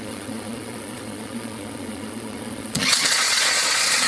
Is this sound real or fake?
fake